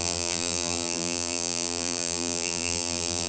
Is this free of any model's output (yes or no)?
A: no